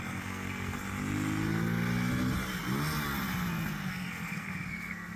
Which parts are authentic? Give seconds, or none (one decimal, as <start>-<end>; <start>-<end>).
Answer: 0.8-3.9